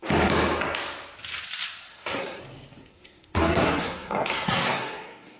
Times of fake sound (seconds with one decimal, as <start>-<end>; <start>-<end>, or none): 1.9-2.4; 2.8-5.4